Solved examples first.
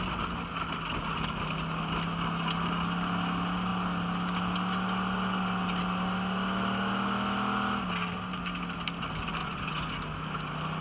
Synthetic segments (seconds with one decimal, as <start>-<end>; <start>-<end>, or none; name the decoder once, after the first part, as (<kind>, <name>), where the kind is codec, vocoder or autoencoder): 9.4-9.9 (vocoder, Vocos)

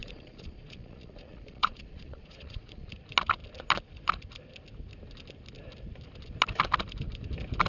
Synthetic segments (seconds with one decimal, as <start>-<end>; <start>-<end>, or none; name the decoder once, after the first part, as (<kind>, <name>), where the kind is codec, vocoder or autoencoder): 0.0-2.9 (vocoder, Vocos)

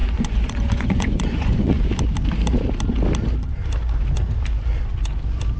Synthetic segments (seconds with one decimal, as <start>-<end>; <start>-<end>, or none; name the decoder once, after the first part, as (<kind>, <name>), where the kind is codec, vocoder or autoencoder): 0.0-1.9 (vocoder, Vocos)

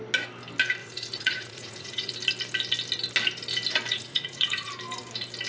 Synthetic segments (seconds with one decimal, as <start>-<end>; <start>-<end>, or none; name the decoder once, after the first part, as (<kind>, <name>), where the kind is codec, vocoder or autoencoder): 0.8-2.1 (vocoder, Vocos); 3.9-4.7

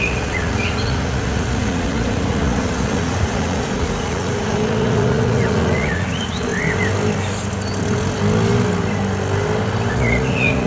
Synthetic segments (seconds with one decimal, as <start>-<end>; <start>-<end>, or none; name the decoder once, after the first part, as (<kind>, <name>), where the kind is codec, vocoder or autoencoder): 0.0-6.5 (vocoder, Vocos); 9.9-10.7

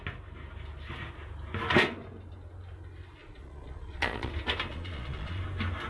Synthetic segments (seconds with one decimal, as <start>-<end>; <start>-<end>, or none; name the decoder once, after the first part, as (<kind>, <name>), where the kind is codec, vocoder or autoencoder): 3.2-4.3 (vocoder, Vocos); 4.7-5.4